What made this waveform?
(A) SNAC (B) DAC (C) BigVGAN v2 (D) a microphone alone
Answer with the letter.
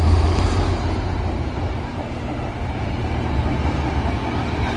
C